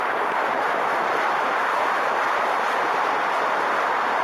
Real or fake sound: real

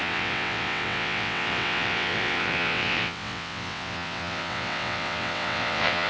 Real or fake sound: fake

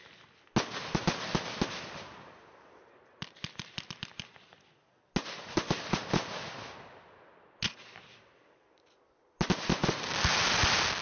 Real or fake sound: real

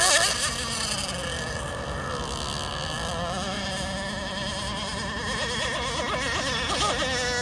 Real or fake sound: real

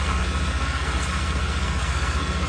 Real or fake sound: fake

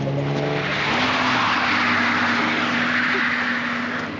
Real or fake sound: real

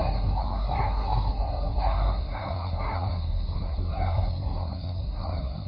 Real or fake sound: fake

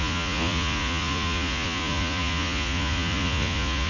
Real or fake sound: fake